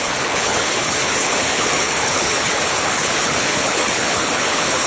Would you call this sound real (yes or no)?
no